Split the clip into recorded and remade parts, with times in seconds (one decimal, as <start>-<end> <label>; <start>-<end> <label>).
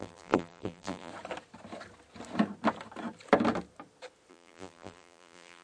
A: 0.0-1.1 remade; 1.1-4.3 recorded; 4.3-5.6 remade